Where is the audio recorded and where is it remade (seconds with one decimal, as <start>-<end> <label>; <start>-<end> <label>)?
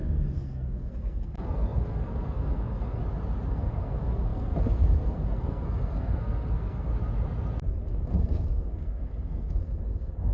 0.0-3.0 remade; 3.0-3.5 recorded; 3.5-6.9 remade; 6.9-7.7 recorded; 7.7-10.3 remade